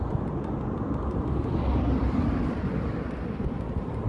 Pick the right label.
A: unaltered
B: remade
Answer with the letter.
A